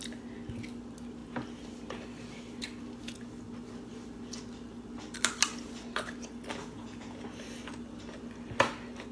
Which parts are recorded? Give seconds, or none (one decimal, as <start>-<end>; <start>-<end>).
0.0-6.6; 7.2-9.1

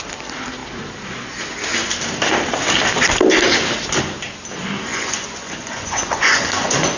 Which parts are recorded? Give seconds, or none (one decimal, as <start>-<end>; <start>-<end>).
0.0-4.9

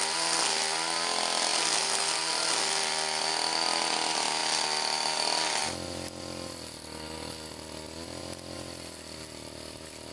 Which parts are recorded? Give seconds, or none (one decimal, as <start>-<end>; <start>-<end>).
0.0-10.1

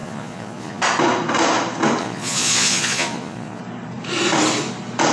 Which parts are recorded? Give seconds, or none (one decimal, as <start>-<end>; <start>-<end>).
0.8-2.0; 3.6-5.1

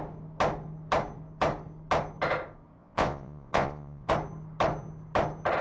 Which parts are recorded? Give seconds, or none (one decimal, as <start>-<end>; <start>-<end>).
0.0-2.8; 4.1-5.6

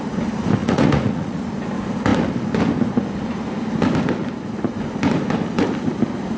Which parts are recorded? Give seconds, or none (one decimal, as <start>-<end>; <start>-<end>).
0.0-0.6; 1.4-6.4

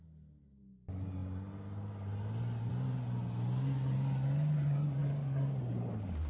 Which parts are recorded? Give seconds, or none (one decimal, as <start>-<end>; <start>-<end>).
0.0-6.3

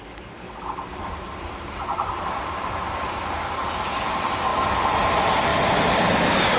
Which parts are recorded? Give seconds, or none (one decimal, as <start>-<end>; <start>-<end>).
0.0-6.6